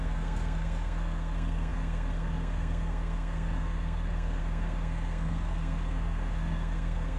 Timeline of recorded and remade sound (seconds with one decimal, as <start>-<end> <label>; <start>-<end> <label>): 0.0-7.2 remade